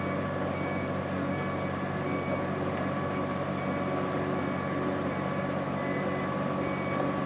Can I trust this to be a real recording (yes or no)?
yes